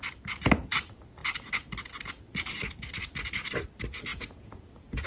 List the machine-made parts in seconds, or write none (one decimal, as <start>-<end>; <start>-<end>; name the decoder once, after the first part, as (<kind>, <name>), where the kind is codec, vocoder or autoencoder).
4.1-5.1 (vocoder, Vocos)

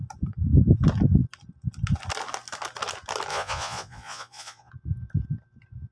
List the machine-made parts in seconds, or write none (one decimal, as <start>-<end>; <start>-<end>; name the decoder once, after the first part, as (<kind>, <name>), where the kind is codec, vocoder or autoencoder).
3.3-4.7 (vocoder, Vocos)

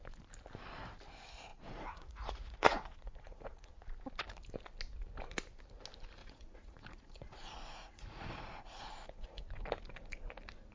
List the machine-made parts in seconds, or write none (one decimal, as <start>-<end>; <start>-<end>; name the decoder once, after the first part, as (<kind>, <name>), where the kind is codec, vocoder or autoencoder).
1.5-3.7 (vocoder, Vocos); 6.2-9.4

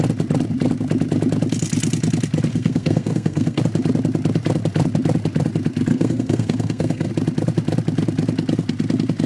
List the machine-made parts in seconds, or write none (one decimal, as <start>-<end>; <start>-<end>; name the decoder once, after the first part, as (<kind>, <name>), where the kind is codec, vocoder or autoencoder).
2.5-3.6 (codec, SNAC); 5.9-7.1